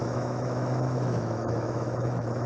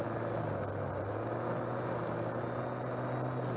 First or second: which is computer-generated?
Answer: first